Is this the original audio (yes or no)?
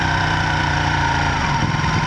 no